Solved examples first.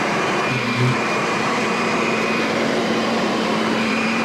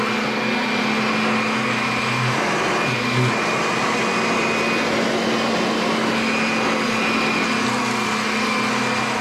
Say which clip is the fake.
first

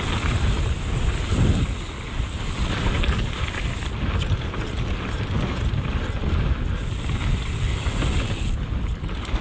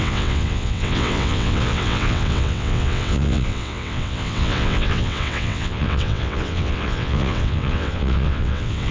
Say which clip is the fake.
second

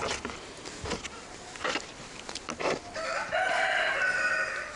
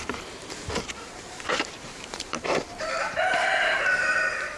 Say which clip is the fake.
second